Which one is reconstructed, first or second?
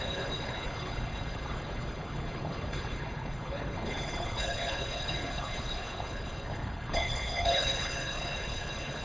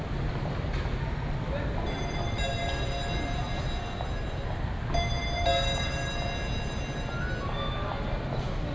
first